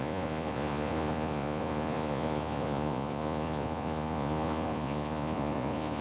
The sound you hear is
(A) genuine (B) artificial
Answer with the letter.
B